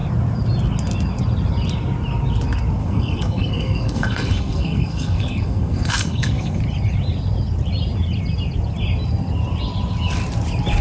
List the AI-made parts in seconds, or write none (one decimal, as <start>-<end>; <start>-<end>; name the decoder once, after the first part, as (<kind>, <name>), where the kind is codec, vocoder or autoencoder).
2.8-6.6 (codec, SNAC)